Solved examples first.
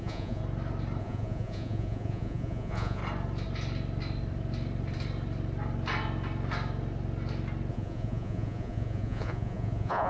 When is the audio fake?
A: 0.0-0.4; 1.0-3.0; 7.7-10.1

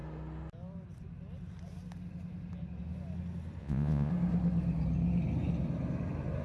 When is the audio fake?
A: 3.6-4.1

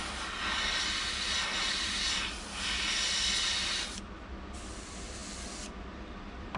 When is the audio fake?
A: none

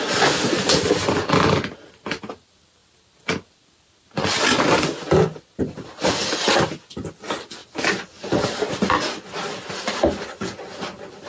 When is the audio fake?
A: none

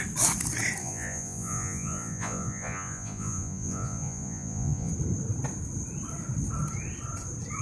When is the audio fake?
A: 0.8-4.9